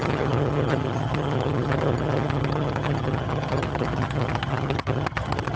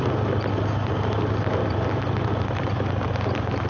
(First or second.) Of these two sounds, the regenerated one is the first